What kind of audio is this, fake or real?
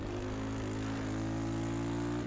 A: real